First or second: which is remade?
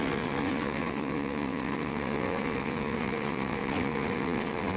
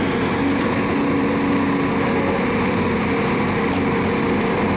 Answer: first